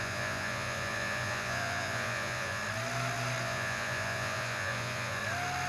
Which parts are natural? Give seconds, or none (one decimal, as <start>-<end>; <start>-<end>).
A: 2.6-3.4; 5.2-5.7